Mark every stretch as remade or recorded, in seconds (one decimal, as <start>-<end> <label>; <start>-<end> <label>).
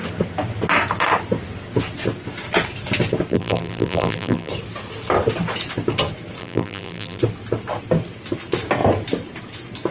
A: 0.0-3.3 recorded; 3.3-4.5 remade; 4.5-6.4 recorded; 6.4-7.2 remade; 7.2-9.9 recorded